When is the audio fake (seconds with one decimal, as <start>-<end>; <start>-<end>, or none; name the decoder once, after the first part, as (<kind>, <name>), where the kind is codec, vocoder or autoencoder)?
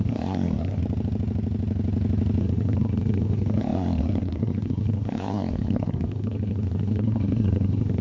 0.0-0.8 (codec, SNAC); 2.4-8.0